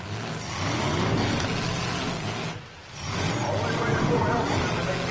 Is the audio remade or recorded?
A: recorded